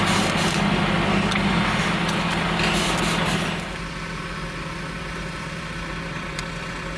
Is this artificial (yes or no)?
no